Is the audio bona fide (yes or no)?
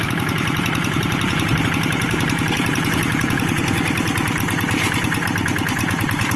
no